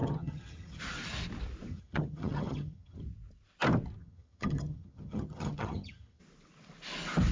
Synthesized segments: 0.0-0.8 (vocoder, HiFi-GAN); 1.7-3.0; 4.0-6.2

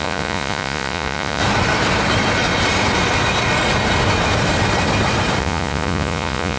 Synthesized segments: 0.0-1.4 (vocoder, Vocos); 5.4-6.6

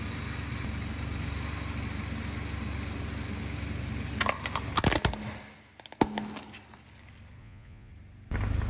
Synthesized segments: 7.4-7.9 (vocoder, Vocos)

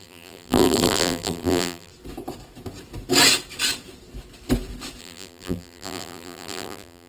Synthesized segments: 0.0-1.9 (vocoder, BigVGAN v2); 5.0-7.1